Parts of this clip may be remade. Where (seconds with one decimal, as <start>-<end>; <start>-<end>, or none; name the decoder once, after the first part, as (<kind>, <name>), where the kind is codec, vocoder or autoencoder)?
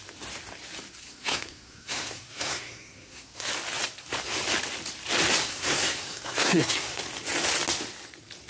1.0-3.5 (codec, SNAC); 5.4-7.0